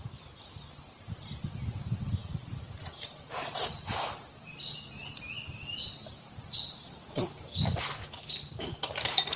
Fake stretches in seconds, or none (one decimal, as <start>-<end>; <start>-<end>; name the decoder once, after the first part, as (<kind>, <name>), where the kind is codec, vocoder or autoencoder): 0.0-5.0 (vocoder, BigVGAN v2); 8.5-9.4